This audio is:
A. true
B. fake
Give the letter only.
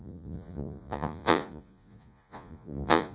B